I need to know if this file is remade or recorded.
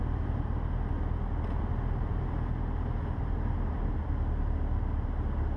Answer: recorded